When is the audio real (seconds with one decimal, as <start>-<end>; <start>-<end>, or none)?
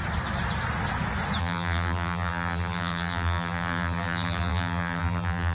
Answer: 0.0-1.4